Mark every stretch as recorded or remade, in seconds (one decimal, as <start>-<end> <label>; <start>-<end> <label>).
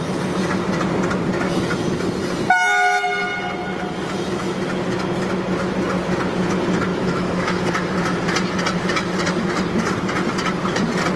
0.0-6.9 recorded; 6.9-7.6 remade; 7.6-11.2 recorded